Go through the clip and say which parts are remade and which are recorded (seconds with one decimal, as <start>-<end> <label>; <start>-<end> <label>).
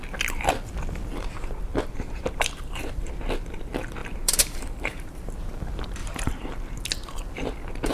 0.0-1.7 recorded; 1.7-3.1 remade; 3.1-4.0 recorded; 4.0-5.2 remade; 5.2-6.0 recorded; 6.0-6.5 remade; 6.5-7.9 recorded